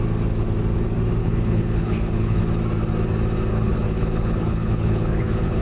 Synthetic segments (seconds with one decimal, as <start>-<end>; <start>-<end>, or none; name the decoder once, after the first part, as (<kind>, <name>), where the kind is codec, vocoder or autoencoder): 1.2-2.4 (codec, HILCodec); 3.5-5.6